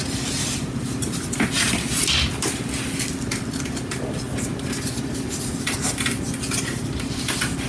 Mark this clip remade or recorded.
recorded